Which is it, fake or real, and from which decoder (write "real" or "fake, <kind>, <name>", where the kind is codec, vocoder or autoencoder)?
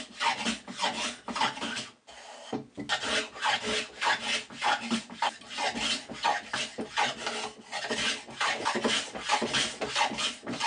real